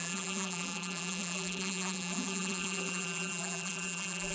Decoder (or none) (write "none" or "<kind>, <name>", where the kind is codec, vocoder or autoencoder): vocoder, BigVGAN v2